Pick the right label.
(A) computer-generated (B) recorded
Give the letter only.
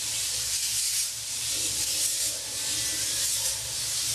A